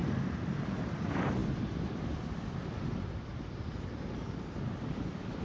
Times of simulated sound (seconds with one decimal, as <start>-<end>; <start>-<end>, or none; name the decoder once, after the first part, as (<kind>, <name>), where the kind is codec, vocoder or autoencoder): none